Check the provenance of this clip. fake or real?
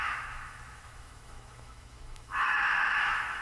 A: fake